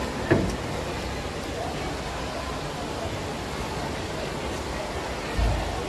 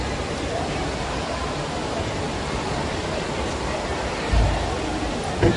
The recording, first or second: first